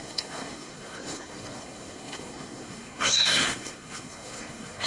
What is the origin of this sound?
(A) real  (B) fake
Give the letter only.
B